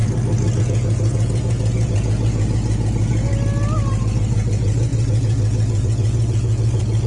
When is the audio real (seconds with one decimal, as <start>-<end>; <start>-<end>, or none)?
0.0-0.6; 3.3-4.0